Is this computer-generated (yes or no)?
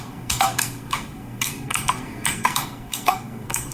yes